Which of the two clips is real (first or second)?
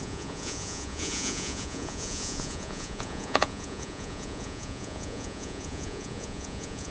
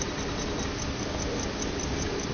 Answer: second